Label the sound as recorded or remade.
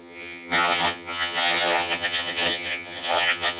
remade